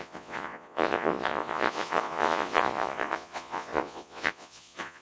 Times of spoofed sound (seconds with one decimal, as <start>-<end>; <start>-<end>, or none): 0.0-5.0

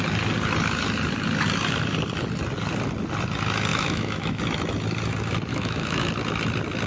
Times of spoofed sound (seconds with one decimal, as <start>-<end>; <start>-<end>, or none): 3.7-4.4; 5.5-6.1